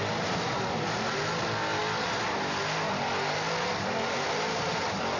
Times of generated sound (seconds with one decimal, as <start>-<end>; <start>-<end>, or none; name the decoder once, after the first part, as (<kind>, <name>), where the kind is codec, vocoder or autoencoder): none